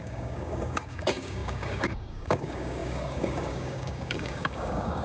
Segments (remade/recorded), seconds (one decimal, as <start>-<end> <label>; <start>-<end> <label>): 0.0-5.0 remade